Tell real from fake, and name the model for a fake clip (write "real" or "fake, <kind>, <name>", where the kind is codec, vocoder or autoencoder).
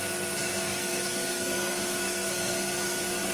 fake, codec, SNAC